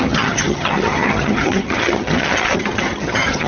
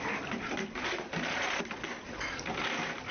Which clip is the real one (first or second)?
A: second